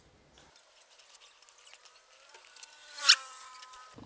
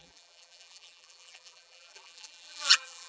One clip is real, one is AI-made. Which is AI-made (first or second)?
second